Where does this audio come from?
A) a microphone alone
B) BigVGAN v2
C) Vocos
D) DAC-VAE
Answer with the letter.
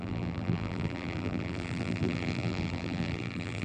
B